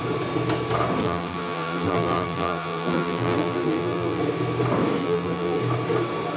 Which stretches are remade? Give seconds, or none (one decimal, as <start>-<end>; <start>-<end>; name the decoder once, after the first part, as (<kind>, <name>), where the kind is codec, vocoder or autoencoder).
1.0-4.2 (vocoder, BigVGAN v2); 5.0-5.6